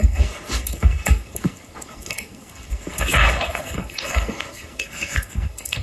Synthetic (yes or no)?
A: yes